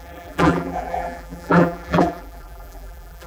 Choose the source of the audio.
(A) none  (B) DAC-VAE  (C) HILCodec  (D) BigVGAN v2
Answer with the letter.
D